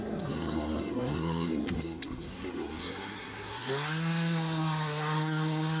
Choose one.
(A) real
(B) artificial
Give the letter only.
B